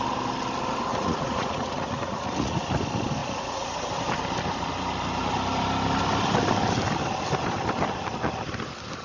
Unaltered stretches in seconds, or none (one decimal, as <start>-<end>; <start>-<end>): 0.0-0.9; 2.6-3.2; 3.8-9.0